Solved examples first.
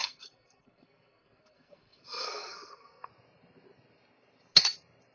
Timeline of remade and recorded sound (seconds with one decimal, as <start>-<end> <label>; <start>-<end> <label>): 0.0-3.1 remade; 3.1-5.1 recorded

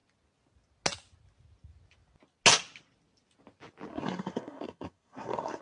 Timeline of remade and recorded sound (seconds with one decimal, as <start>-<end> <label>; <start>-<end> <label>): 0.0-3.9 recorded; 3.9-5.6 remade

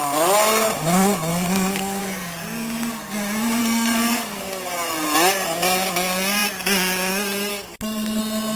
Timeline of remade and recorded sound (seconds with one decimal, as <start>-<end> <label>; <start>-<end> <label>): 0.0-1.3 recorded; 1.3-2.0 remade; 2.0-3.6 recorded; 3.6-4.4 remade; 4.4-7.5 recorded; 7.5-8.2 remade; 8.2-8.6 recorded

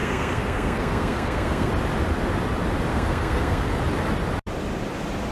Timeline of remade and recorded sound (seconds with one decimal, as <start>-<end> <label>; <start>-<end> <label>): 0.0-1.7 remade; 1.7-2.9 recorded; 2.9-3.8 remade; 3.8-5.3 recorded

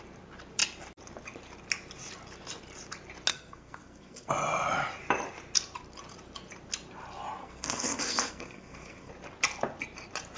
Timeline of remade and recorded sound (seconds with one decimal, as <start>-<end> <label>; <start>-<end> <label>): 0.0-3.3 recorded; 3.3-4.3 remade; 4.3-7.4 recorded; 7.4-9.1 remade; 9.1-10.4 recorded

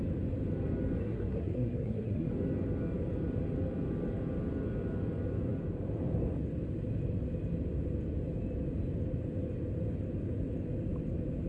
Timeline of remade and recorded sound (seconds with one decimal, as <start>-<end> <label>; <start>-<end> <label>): 0.0-1.0 recorded; 1.0-2.3 remade; 2.3-11.5 recorded

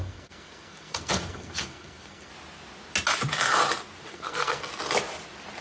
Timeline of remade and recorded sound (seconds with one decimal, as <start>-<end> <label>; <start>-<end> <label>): 0.0-2.3 remade; 2.3-4.1 recorded; 4.1-4.7 remade; 4.7-5.6 recorded

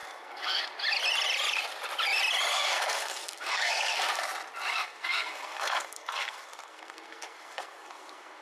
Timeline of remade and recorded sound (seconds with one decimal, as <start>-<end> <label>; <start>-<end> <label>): 0.0-0.6 remade; 0.6-2.5 recorded; 2.5-4.2 remade; 4.2-4.7 recorded; 4.7-8.4 remade